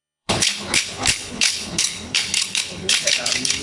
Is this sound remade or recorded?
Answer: remade